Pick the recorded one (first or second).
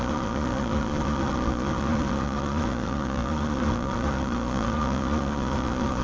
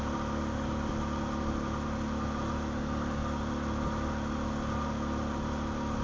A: second